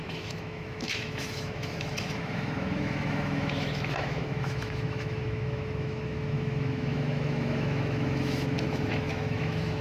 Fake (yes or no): yes